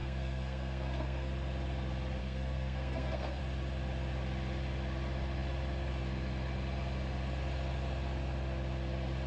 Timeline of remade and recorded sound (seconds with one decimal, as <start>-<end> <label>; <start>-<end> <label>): 0.0-1.3 remade; 1.3-2.2 recorded; 2.2-3.4 remade; 3.4-9.3 recorded